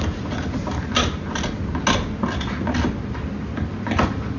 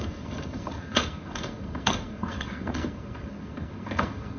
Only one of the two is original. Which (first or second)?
first